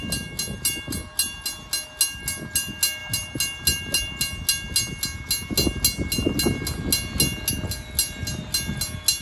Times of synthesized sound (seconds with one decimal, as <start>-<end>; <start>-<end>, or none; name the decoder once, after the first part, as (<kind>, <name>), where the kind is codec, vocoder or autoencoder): none